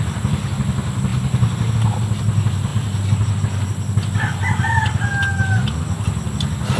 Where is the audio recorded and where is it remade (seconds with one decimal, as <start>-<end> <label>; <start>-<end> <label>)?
0.0-6.8 recorded